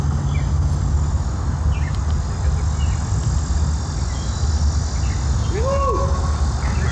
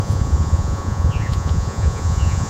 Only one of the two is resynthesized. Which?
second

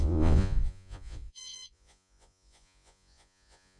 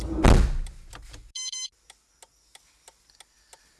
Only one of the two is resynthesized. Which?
first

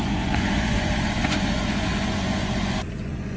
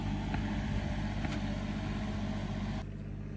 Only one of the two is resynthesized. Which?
first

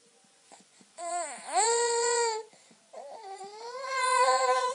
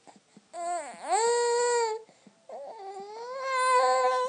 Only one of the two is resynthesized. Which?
first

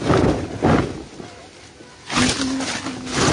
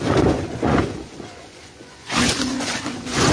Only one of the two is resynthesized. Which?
second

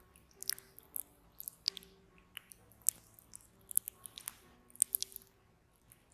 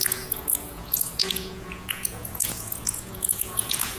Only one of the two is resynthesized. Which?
second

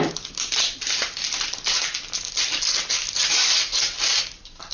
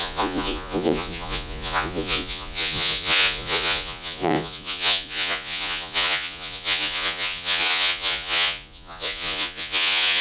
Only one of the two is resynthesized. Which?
second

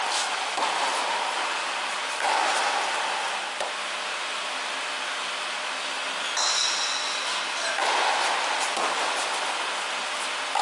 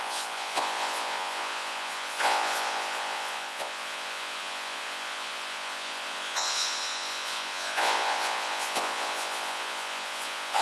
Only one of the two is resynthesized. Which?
second